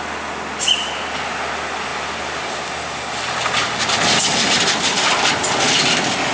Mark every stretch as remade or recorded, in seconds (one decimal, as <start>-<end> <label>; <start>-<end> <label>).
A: 0.0-6.3 recorded

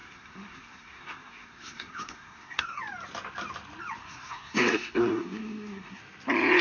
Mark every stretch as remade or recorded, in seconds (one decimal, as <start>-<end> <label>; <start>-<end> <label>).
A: 0.0-2.8 remade; 2.8-4.0 recorded; 4.0-6.0 remade; 6.0-6.6 recorded

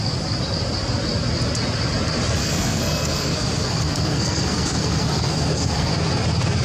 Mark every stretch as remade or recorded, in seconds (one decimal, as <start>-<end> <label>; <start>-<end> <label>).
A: 0.0-2.4 recorded; 2.4-5.9 remade; 5.9-6.6 recorded